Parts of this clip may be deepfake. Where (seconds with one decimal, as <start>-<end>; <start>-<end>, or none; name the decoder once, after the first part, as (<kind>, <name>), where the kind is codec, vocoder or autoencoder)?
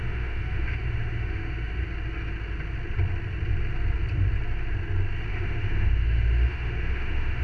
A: 0.0-1.8 (autoencoder, DAC-VAE); 5.3-7.4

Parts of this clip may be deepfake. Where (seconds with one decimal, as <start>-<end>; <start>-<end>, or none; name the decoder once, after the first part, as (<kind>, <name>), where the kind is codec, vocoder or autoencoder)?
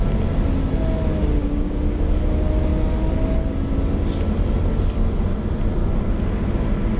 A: 1.4-2.3 (codec, DAC)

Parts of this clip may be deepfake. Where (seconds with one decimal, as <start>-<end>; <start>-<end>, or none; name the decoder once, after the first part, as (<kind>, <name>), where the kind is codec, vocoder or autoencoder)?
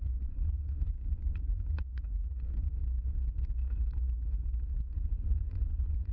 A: 0.0-2.8 (vocoder, Vocos); 4.9-6.1